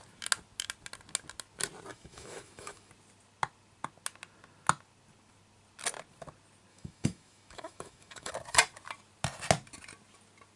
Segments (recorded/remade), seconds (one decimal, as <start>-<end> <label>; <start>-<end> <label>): 0.0-1.9 recorded; 1.9-2.9 remade; 2.9-6.7 recorded; 6.7-8.3 remade; 8.3-10.6 recorded